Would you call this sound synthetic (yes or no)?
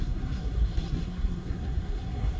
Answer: yes